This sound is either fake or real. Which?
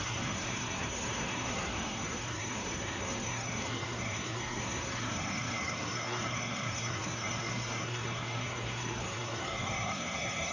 fake